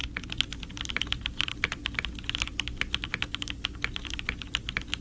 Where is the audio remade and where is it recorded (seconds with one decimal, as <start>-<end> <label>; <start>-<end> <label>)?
0.0-5.0 recorded